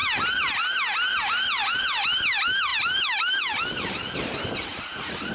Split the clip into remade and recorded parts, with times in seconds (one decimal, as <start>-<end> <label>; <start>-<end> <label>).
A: 0.0-4.7 recorded; 4.7-5.3 remade